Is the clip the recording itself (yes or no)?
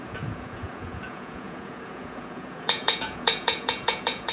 no